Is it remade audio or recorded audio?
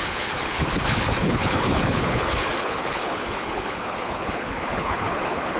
remade